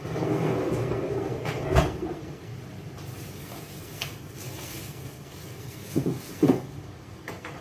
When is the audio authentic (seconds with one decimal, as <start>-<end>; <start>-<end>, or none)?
2.5-3.3